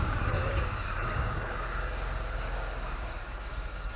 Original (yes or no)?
no